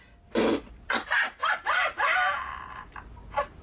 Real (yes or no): yes